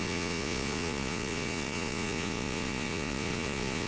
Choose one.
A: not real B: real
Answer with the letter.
A